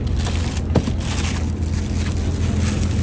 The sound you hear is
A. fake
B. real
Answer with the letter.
B